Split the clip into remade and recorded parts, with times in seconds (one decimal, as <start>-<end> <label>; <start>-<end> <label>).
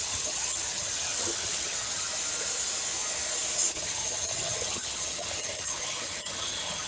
0.0-2.1 remade; 2.1-3.7 recorded; 3.7-6.9 remade